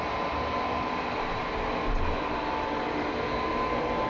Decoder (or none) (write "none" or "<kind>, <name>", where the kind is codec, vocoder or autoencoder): none